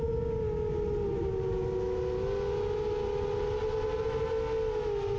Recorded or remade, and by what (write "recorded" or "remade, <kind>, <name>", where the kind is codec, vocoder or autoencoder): recorded